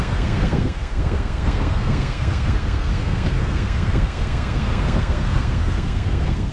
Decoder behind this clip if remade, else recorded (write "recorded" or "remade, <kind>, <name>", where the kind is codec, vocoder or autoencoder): remade, codec, SNAC